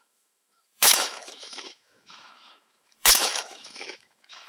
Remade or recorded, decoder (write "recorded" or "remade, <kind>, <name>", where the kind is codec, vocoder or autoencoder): remade, autoencoder, DAC-VAE